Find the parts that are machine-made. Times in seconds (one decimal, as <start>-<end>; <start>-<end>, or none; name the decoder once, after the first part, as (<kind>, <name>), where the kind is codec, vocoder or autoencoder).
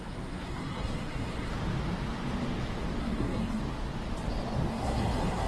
0.0-1.5 (codec, SNAC); 3.0-3.6; 4.7-5.5